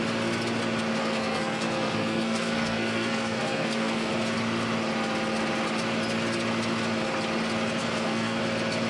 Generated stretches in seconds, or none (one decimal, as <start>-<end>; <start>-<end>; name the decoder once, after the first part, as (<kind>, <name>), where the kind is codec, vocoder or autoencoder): 1.0-4.1 (codec, SNAC); 7.8-8.4